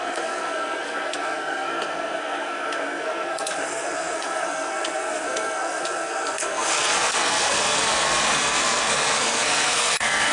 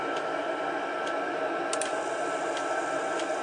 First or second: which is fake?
first